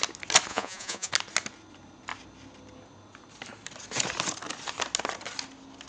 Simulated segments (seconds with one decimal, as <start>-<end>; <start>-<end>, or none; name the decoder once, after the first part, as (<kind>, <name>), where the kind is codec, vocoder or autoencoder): 0.5-1.1 (vocoder, Vocos)